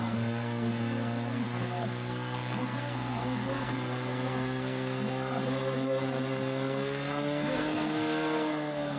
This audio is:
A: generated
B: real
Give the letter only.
A